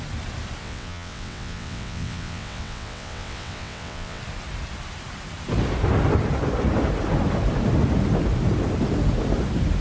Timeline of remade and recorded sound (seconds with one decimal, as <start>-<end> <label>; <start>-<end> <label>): 0.0-0.6 recorded; 0.6-4.2 remade; 4.2-9.8 recorded